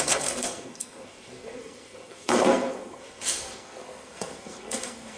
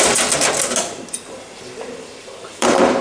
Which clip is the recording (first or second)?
second